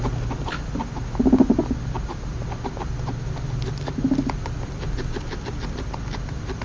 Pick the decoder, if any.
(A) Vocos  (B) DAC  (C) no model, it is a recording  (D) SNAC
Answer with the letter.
C